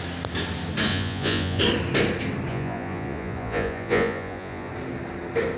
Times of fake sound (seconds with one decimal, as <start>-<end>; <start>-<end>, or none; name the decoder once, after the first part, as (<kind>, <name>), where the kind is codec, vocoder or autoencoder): 0.9-1.6 (vocoder, Vocos); 2.5-4.7